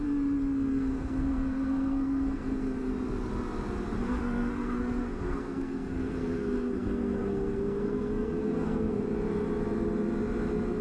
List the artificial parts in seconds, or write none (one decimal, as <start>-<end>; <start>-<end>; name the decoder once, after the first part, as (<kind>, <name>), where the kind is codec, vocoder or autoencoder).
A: 0.7-2.9 (codec, SNAC); 4.0-9.0